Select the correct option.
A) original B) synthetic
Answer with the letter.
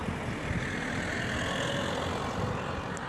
A